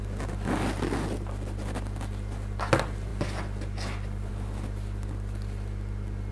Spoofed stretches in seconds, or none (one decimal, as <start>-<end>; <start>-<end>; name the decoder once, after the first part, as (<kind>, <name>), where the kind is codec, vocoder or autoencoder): none